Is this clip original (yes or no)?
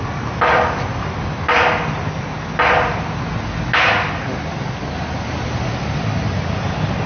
yes